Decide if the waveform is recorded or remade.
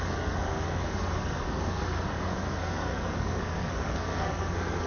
remade